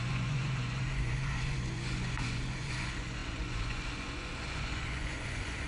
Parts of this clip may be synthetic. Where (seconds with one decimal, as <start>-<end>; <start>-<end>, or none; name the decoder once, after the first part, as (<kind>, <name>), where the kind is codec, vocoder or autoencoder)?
0.0-5.7 (vocoder, Vocos)